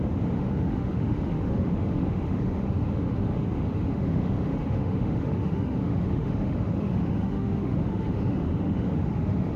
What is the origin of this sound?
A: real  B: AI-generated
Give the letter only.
B